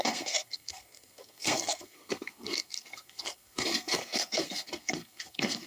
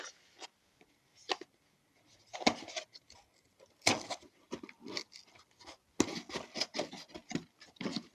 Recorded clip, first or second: second